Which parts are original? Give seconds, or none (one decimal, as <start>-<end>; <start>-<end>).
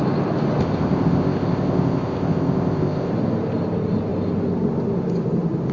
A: 0.0-0.6; 3.1-5.7